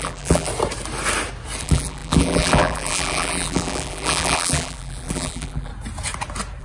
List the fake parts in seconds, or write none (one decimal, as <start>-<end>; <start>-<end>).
0.0-0.5; 1.6-5.7

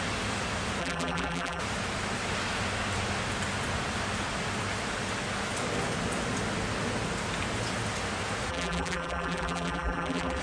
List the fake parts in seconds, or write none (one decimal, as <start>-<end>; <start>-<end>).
0.8-1.6; 8.5-10.4